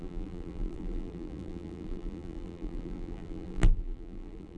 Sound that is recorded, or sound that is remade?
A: remade